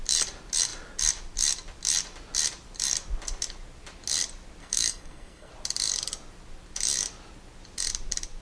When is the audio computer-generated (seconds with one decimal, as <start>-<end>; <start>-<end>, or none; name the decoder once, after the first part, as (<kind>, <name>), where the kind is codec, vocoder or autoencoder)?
4.6-5.5 (codec, SNAC)